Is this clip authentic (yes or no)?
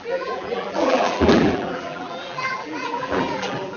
no